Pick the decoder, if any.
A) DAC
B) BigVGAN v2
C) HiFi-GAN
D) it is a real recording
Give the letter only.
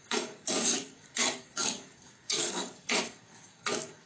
A